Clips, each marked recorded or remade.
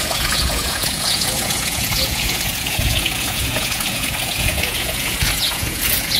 remade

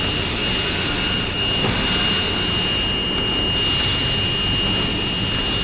recorded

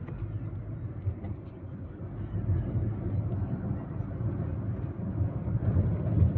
recorded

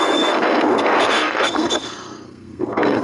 remade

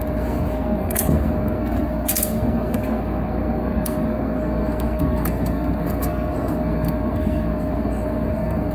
remade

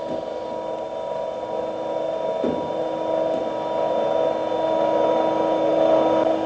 recorded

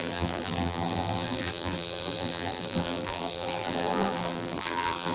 remade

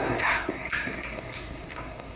remade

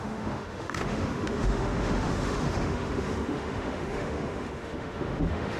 remade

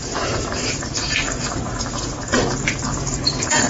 remade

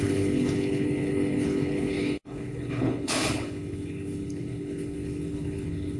remade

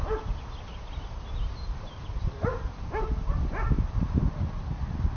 recorded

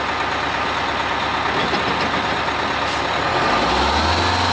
recorded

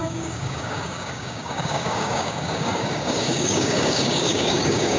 remade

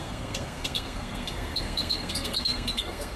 remade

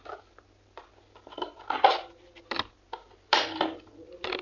recorded